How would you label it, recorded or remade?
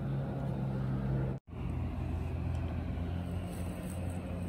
recorded